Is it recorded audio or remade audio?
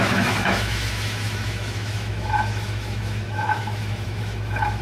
remade